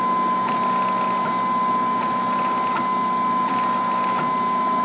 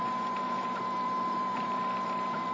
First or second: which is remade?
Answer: second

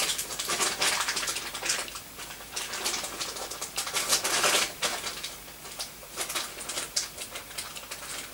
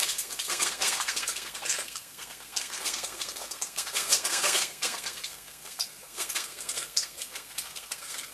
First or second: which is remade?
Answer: second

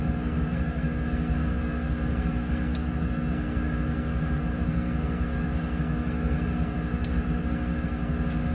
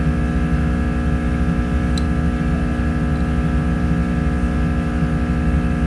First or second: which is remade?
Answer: first